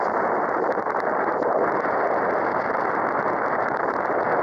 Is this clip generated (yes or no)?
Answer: no